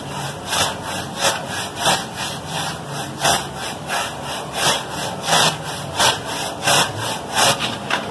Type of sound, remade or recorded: remade